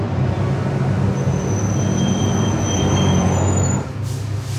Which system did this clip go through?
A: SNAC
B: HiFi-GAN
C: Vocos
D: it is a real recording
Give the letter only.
D